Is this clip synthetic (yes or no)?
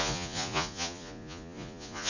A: yes